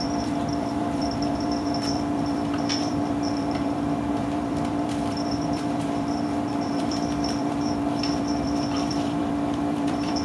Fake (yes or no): yes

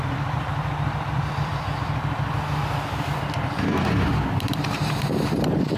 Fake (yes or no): yes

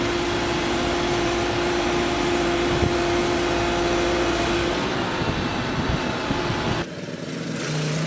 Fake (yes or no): no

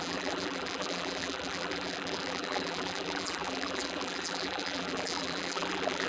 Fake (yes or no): yes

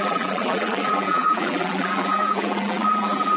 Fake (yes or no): yes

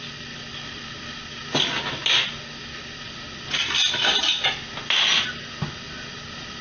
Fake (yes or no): no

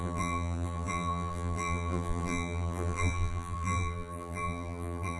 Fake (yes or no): yes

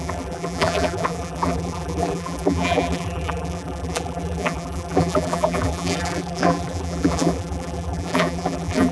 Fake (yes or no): yes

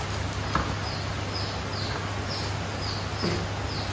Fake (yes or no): no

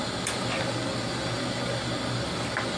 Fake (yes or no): no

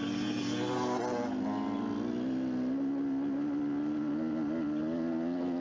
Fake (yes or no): no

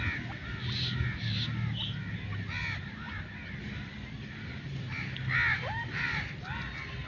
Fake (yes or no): no